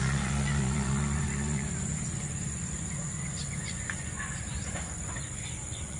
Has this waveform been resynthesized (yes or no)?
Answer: yes